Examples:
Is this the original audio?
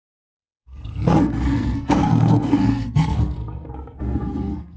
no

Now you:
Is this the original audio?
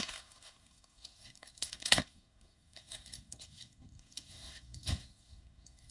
no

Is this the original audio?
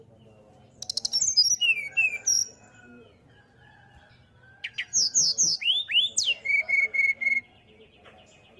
yes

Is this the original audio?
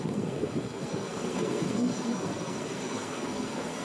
no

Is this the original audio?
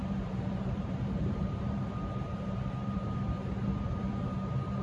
no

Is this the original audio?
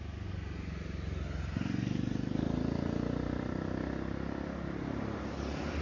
yes